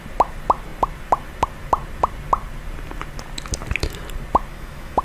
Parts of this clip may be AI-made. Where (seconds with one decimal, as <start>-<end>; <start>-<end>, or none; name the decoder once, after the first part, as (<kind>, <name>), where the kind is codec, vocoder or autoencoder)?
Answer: 4.5-5.0 (autoencoder, DAC-VAE)